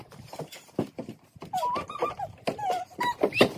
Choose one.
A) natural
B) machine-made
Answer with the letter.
A